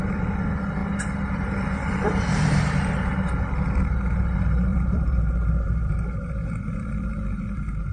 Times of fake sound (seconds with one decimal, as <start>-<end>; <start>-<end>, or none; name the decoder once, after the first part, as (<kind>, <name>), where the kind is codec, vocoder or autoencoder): 0.0-7.9 (vocoder, BigVGAN v2)